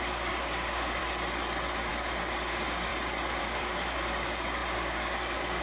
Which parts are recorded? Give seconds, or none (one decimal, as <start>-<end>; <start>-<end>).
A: 1.0-1.9; 2.9-3.4